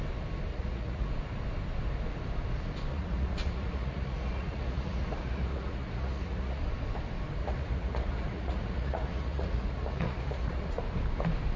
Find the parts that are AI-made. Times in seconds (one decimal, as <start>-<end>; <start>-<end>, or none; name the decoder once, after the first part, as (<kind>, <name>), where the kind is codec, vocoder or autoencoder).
0.5-1.1 (vocoder, Vocos); 2.9-6.6; 7.4-10.8